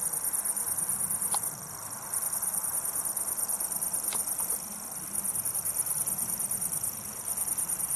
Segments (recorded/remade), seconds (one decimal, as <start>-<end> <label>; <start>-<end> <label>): 0.0-8.0 recorded